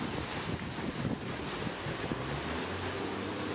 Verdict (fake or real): real